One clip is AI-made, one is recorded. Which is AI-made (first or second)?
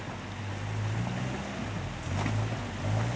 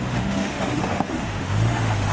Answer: second